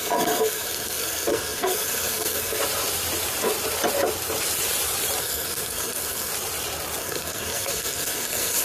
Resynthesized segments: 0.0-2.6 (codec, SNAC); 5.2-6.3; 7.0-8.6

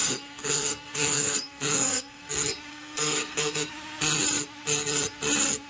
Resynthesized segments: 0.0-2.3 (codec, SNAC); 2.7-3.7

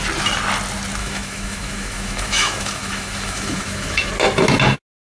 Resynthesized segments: 1.0-4.1 (autoencoder, DAC-VAE)